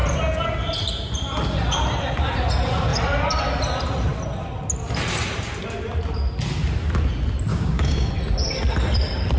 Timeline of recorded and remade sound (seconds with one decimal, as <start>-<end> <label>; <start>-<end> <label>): 0.0-7.5 recorded; 7.5-8.1 remade; 8.1-9.4 recorded